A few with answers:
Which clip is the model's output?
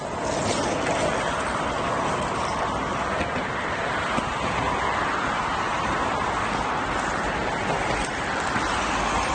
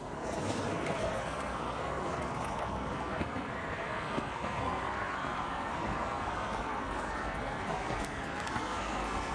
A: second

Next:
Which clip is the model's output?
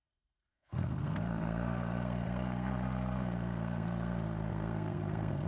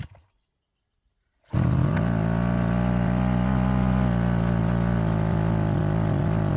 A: first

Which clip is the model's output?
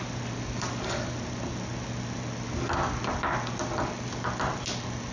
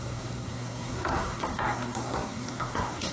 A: second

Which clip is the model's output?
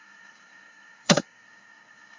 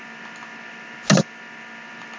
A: first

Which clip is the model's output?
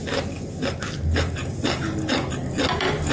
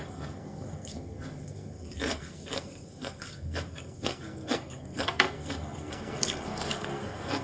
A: second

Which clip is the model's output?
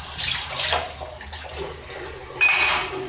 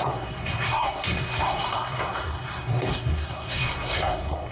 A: second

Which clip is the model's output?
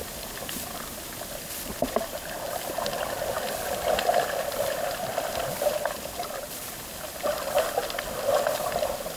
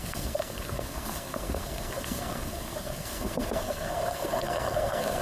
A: second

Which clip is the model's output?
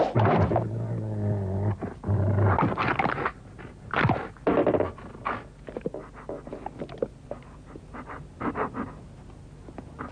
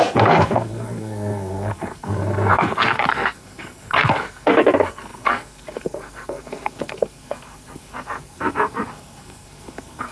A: second